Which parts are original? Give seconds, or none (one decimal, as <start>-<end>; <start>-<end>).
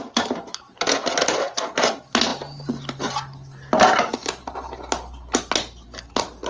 0.0-6.5